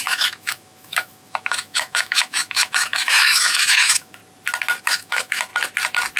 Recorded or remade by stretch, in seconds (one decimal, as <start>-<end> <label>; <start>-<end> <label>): 0.0-4.2 remade; 4.2-4.8 recorded; 4.8-5.5 remade; 5.5-6.2 recorded